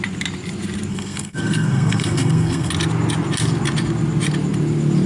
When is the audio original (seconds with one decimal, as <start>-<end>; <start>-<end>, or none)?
0.0-0.9; 2.7-5.1